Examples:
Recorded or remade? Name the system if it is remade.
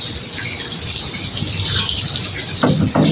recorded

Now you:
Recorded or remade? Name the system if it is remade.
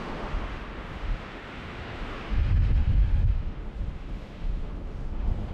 remade, autoencoder, DAC-VAE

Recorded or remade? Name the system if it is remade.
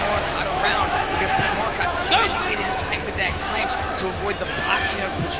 remade, autoencoder, DAC-VAE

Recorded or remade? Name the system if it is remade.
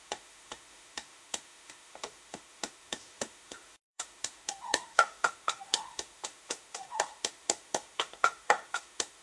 remade, autoencoder, DAC-VAE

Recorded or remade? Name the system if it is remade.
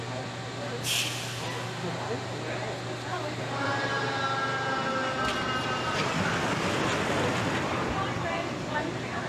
recorded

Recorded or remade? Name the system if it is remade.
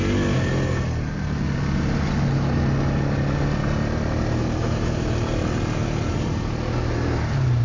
recorded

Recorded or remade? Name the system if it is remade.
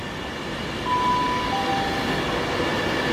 recorded